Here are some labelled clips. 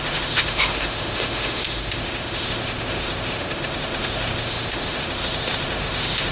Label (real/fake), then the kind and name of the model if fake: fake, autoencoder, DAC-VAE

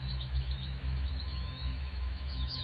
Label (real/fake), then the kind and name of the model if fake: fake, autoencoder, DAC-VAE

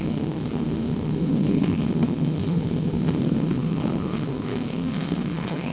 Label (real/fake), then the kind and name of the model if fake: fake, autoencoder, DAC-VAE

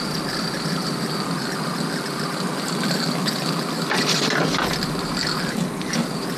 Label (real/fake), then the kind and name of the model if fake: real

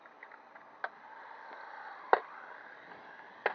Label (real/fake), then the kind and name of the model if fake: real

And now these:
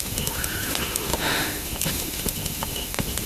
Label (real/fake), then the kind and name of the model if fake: fake, autoencoder, DAC-VAE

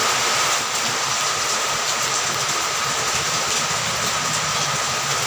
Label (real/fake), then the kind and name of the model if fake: real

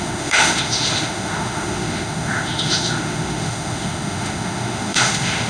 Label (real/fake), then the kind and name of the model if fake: fake, autoencoder, DAC-VAE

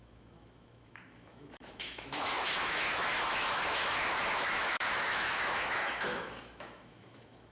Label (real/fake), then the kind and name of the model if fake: fake, autoencoder, DAC-VAE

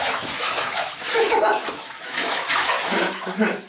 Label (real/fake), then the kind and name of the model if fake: fake, autoencoder, DAC-VAE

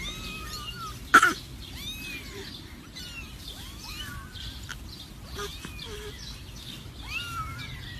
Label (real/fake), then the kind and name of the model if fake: real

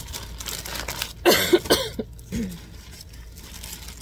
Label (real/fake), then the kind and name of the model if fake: real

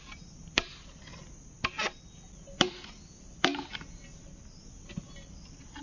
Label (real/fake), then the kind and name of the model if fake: real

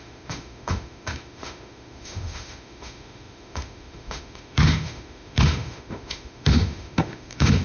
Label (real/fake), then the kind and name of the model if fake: fake, autoencoder, DAC-VAE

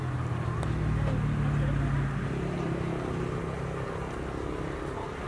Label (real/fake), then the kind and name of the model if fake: real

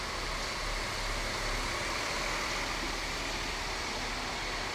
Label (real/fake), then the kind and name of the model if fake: real